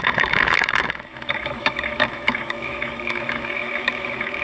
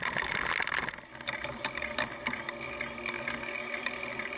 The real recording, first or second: second